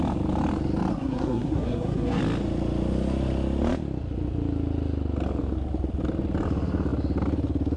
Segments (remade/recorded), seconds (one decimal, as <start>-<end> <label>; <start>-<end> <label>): 0.0-0.9 recorded; 0.9-2.2 remade; 2.2-7.8 recorded